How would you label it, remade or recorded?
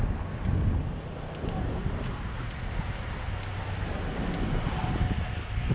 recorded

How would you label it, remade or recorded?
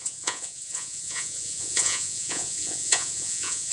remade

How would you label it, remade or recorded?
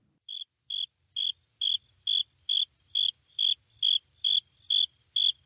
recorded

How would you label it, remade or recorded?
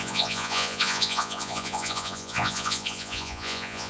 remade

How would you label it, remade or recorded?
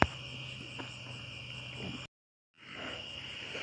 recorded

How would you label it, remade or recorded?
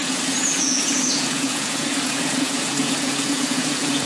remade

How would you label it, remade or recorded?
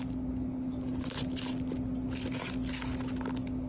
recorded